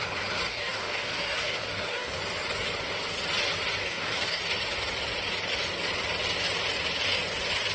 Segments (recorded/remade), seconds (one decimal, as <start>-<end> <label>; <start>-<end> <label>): 0.0-0.5 recorded; 0.5-2.2 remade; 2.2-3.8 recorded; 3.8-4.4 remade; 4.4-7.7 recorded